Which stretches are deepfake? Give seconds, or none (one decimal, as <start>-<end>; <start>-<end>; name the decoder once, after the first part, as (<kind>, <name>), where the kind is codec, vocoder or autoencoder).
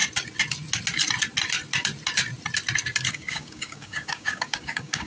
3.1-5.1 (codec, DAC)